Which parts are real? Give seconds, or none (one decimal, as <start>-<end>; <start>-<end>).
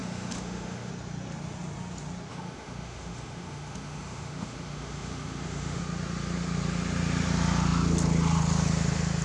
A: 0.9-2.3; 5.8-9.2